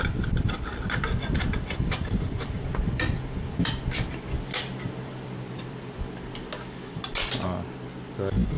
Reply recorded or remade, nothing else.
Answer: remade